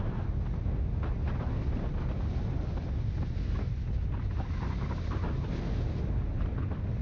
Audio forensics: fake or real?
real